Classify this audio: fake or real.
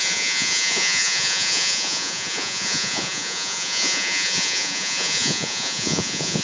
fake